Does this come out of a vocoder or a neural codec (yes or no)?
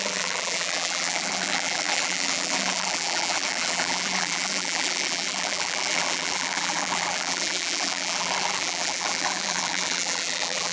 yes